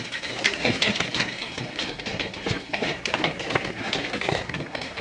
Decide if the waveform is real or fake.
fake